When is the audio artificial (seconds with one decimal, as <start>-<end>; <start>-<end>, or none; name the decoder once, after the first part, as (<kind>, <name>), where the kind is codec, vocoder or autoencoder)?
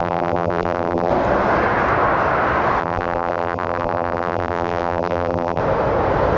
0.0-1.1 (vocoder, BigVGAN v2); 2.8-5.6